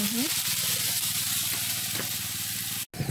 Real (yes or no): yes